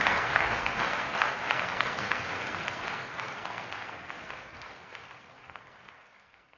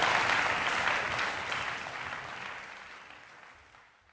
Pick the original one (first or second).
second